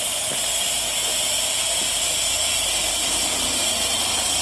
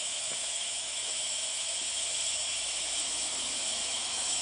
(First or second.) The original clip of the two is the first